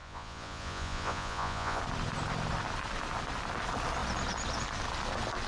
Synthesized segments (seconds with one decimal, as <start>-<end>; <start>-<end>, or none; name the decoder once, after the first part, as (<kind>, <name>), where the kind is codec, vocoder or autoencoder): 0.0-1.8 (vocoder, Vocos)